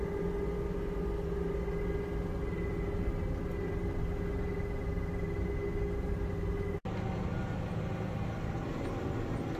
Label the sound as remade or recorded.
recorded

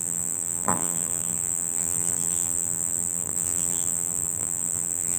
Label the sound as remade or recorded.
remade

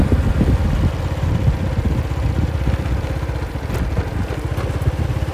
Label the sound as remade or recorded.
recorded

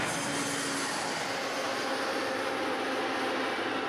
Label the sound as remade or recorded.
recorded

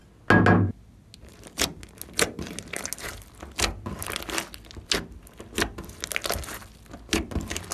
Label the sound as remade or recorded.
recorded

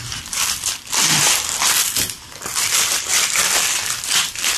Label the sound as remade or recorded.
remade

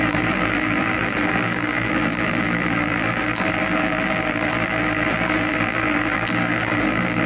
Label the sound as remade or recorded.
remade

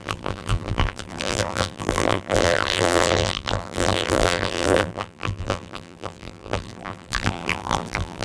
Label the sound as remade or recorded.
remade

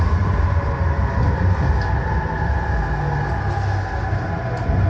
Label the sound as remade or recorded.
recorded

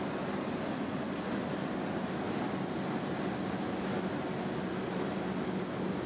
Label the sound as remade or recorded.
recorded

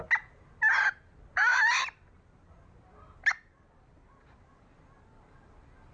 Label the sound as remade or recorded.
recorded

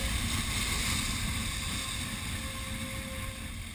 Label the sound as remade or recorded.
recorded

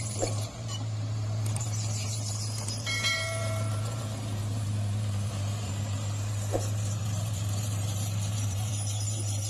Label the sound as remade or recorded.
remade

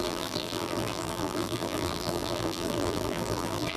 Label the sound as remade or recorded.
remade